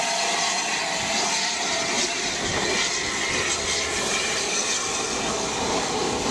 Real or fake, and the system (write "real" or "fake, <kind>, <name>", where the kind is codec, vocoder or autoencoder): real